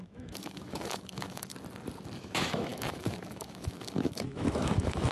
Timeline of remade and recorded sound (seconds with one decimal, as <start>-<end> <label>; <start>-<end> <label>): 0.0-1.5 remade; 1.5-2.2 recorded; 2.2-5.1 remade